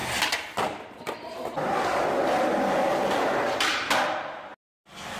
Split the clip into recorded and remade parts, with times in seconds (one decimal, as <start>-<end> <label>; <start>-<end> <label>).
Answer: 0.0-5.2 recorded

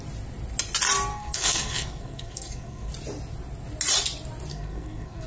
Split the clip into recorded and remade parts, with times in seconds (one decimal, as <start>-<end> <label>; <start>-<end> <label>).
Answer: 0.0-1.1 recorded; 1.1-2.9 remade; 2.9-4.5 recorded; 4.5-5.3 remade